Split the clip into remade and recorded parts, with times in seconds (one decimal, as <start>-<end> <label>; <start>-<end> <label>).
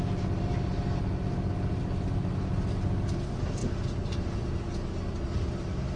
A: 0.0-6.0 recorded